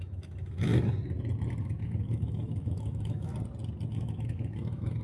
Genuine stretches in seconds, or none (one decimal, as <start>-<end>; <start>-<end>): 0.7-1.6; 3.3-3.9